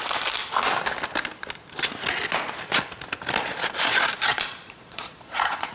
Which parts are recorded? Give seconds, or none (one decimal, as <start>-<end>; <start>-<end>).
0.0-4.3